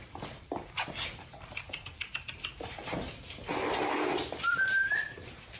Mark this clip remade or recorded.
remade